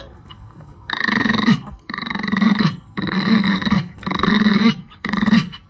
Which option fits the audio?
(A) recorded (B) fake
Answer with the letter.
B